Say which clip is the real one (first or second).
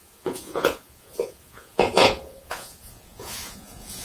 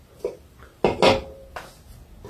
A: second